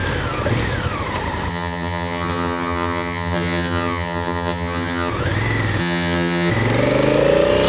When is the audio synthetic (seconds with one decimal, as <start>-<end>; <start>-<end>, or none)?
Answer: 1.5-5.1; 5.8-6.5